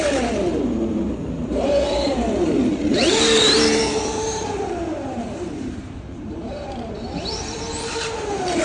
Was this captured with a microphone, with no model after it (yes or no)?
no